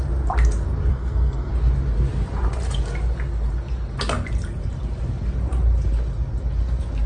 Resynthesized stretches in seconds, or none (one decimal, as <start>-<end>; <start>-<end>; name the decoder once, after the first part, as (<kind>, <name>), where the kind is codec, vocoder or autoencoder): 0.9-1.5 (codec, SNAC)